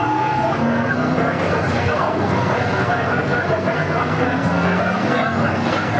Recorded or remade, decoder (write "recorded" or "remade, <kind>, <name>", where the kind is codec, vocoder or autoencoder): remade, codec, SNAC